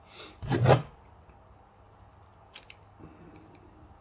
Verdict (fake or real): real